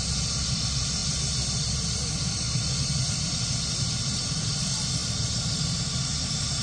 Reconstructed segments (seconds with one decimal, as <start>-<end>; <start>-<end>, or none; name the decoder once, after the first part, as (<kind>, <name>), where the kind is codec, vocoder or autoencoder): none